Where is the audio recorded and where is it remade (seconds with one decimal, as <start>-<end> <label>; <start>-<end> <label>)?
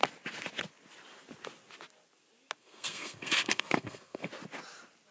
0.0-2.6 recorded; 2.6-4.3 remade; 4.3-5.1 recorded